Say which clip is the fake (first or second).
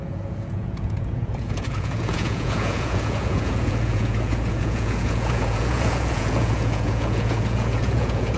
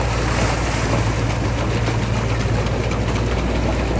first